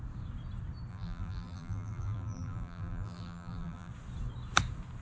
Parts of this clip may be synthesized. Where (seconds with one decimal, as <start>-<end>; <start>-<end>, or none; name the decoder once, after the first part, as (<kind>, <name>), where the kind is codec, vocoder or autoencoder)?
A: 0.9-3.9 (vocoder, BigVGAN v2)